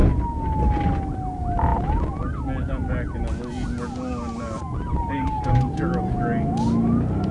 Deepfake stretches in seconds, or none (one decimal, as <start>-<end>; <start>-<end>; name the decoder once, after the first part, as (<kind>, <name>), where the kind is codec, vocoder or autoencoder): none